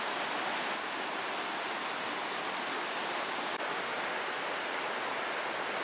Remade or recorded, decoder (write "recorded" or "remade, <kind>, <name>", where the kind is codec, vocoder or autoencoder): recorded